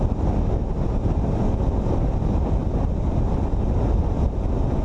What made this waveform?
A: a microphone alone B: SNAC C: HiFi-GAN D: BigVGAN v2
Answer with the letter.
A